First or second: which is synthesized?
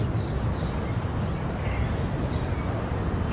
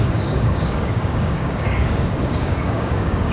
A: second